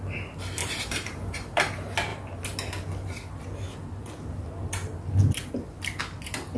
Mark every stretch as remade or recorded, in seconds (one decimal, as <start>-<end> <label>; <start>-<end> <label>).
0.0-0.6 recorded; 0.6-1.6 remade; 1.6-6.6 recorded